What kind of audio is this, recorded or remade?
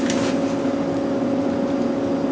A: recorded